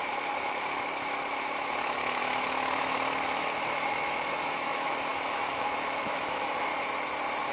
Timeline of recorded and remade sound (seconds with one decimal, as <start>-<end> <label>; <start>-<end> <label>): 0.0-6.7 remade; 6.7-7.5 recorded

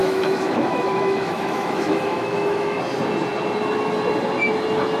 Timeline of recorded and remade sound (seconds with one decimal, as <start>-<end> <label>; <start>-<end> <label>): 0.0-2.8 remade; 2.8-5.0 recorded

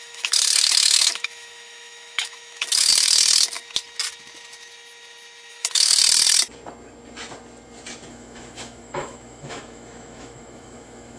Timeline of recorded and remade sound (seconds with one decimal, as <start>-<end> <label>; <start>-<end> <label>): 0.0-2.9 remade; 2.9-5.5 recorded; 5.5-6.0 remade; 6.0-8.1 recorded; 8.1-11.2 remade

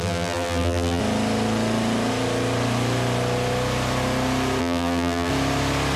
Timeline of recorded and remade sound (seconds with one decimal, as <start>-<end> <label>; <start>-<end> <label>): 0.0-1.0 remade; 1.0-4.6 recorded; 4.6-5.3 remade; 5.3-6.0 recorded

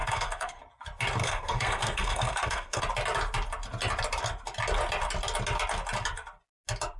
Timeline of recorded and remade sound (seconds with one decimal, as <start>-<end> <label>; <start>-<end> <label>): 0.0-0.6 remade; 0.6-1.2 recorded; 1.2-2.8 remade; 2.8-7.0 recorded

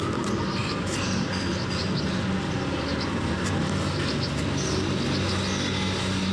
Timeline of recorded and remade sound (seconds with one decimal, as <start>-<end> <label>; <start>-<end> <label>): 0.0-6.3 recorded